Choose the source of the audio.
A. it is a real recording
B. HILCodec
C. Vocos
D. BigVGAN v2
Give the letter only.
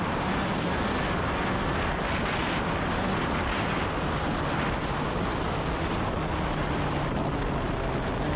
A